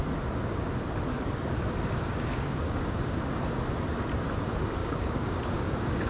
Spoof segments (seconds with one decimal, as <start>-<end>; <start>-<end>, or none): 2.1-3.2; 4.8-6.1